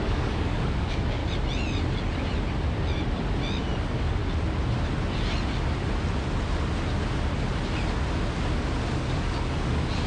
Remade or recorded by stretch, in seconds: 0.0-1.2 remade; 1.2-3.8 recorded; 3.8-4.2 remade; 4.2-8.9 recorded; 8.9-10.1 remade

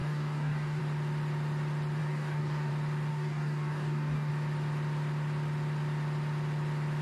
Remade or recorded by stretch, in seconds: 0.0-0.8 remade; 0.8-2.0 recorded; 2.0-2.7 remade; 2.7-3.1 recorded; 3.1-4.3 remade; 4.3-7.0 recorded

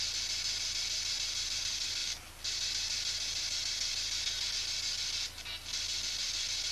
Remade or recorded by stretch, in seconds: 0.0-6.7 recorded

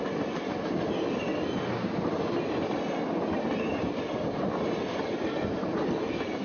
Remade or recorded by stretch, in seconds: 0.0-6.4 recorded

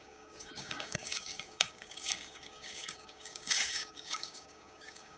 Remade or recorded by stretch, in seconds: 0.0-5.2 remade